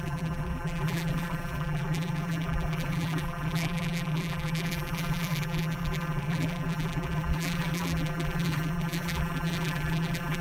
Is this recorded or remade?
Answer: remade